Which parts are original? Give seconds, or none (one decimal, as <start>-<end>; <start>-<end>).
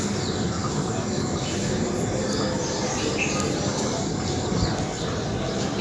0.0-5.8